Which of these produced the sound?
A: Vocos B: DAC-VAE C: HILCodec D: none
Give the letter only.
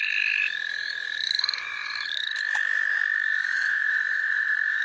B